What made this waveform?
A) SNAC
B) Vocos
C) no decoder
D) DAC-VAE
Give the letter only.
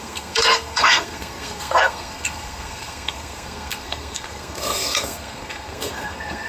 A